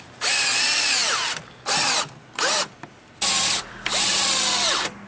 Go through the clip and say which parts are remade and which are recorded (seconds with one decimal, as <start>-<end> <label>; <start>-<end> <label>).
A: 0.0-3.0 recorded; 3.0-4.1 remade; 4.1-5.1 recorded